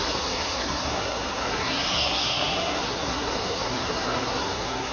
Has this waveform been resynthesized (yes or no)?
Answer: yes